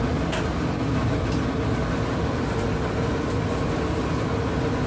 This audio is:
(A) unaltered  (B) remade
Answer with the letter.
A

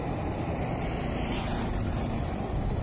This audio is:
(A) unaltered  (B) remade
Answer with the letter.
A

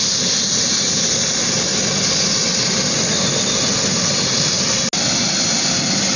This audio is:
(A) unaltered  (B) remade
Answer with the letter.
A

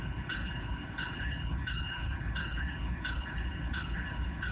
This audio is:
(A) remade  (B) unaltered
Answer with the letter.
A